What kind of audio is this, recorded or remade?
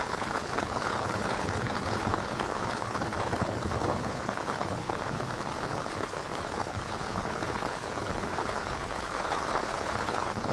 remade